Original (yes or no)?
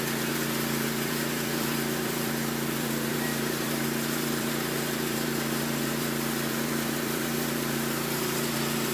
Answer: no